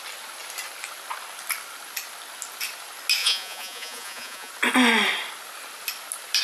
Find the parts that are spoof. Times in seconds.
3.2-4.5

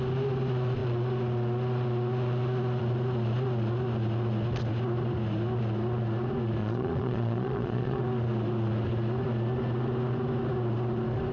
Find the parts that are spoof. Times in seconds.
6.6-8.0